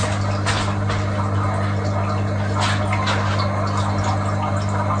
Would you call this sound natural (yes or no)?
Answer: yes